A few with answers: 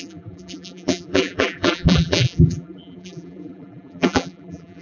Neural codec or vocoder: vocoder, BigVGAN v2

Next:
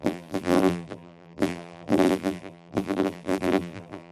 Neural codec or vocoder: vocoder, BigVGAN v2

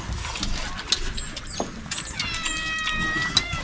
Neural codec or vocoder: none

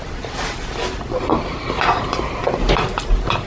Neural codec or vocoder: none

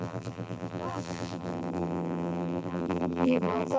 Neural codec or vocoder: vocoder, BigVGAN v2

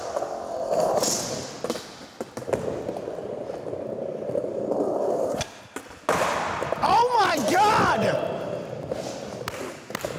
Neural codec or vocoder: none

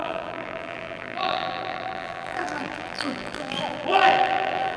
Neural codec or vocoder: vocoder, BigVGAN v2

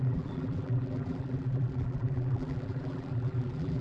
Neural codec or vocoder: vocoder, BigVGAN v2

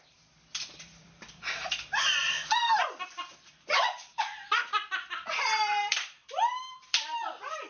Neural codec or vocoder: vocoder, BigVGAN v2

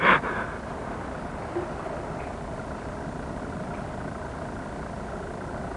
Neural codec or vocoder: none